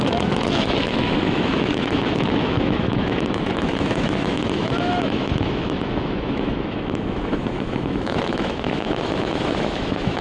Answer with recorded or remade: remade